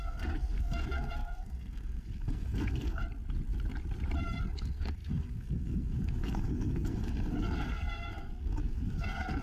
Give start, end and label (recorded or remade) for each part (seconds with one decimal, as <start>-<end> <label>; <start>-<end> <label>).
0.0-3.0 remade; 3.0-4.4 recorded; 4.4-9.4 remade